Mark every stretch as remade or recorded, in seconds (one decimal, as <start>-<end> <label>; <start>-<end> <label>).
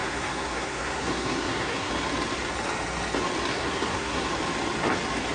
0.0-1.9 remade; 1.9-3.5 recorded; 3.5-4.3 remade; 4.3-5.3 recorded